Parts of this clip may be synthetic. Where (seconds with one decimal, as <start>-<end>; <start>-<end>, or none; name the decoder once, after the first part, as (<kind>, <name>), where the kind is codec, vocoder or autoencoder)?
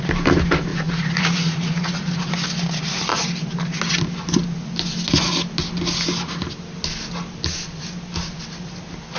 0.7-2.3 (vocoder, Vocos)